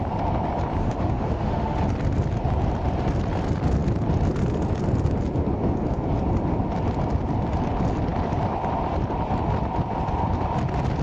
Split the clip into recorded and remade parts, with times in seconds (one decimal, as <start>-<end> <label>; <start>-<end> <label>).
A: 0.0-0.8 recorded; 0.8-1.8 remade; 1.8-11.0 recorded